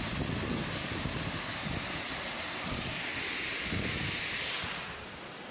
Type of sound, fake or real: real